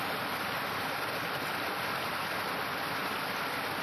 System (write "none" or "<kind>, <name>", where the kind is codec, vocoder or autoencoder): none